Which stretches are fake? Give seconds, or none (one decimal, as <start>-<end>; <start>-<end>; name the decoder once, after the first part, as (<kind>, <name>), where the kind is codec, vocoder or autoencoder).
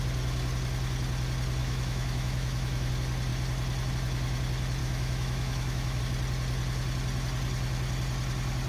1.6-2.9 (autoencoder, DAC-VAE); 4.8-6.0